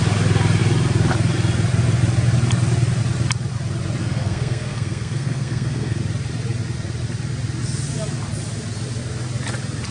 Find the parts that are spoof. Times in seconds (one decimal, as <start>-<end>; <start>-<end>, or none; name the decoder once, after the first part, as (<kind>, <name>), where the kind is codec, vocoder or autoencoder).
4.0-6.0 (codec, SNAC)